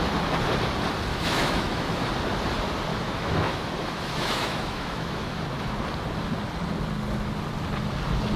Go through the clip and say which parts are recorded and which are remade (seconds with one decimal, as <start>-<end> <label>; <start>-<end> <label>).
0.0-1.1 recorded; 1.1-2.1 remade; 2.1-2.9 recorded; 2.9-5.4 remade; 5.4-8.4 recorded